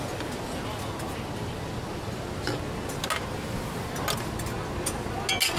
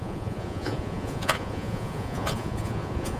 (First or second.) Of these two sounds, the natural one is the first